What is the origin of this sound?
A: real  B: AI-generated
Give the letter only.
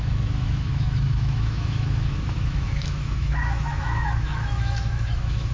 B